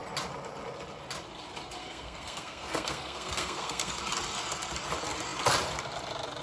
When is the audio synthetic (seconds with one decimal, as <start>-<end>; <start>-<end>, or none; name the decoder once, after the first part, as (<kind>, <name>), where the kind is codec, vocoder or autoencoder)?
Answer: 1.8-4.0 (codec, SNAC)